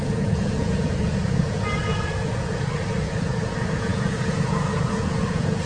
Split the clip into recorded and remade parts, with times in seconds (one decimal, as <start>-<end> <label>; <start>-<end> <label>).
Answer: 0.0-5.7 remade